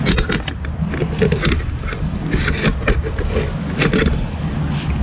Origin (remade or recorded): recorded